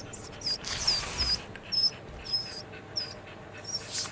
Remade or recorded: recorded